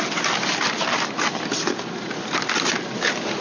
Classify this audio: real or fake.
real